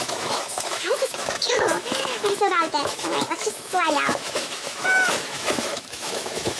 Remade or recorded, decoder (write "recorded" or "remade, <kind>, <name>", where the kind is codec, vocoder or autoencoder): remade, autoencoder, DAC-VAE